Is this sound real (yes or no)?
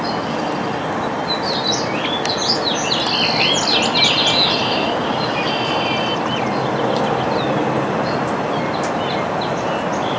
yes